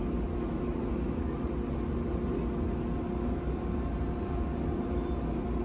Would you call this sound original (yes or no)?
yes